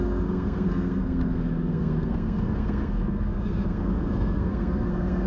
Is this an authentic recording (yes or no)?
no